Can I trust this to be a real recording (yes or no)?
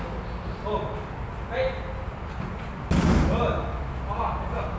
yes